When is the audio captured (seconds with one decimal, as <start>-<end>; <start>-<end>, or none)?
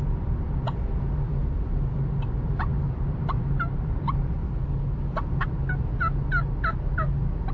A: 4.4-7.5